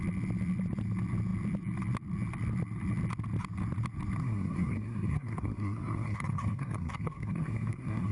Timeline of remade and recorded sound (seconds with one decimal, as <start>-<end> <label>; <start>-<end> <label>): 0.0-4.2 recorded; 4.2-8.1 remade